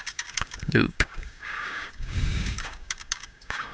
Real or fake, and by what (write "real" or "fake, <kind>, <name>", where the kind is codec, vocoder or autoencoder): fake, codec, DAC